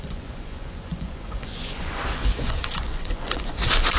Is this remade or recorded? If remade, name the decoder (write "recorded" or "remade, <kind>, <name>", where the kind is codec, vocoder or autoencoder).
remade, vocoder, Vocos